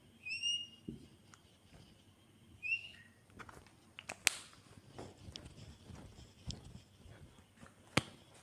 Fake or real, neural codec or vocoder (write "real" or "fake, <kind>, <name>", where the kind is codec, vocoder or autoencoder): real